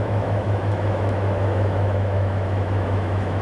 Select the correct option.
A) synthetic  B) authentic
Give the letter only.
A